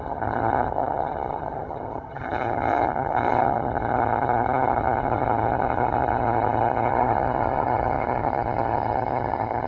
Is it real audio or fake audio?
fake